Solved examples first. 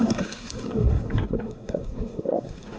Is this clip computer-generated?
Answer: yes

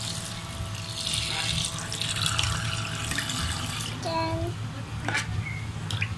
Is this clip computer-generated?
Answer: no